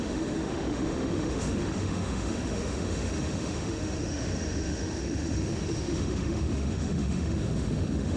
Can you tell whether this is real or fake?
fake